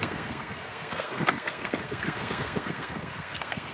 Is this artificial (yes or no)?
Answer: yes